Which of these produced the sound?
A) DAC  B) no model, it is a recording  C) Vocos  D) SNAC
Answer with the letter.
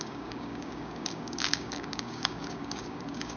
A